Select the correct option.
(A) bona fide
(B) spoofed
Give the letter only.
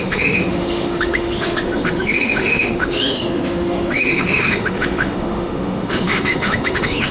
B